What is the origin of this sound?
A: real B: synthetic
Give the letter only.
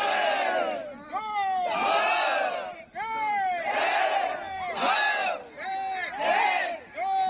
A